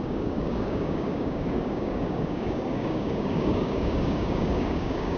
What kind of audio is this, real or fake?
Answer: fake